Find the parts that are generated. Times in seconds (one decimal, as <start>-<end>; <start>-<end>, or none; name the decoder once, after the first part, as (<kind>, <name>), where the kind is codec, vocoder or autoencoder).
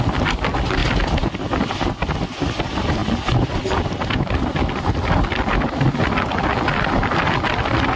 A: none